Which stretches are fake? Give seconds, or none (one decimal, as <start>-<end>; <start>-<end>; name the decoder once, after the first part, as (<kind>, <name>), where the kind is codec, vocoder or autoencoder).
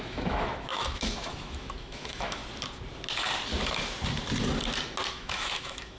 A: 0.0-2.4 (autoencoder, DAC-VAE); 5.1-6.0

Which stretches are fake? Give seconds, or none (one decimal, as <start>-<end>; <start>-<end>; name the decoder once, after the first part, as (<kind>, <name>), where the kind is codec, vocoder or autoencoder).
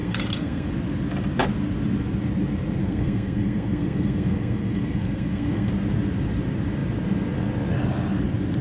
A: 0.0-0.7 (codec, SNAC); 2.8-5.7